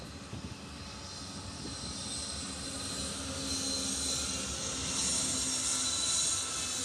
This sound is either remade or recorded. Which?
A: recorded